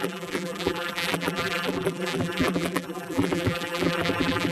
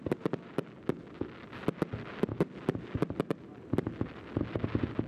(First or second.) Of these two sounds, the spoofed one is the first